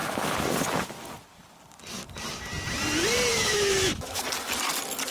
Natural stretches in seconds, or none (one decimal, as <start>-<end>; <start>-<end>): 0.0-3.3; 4.2-5.1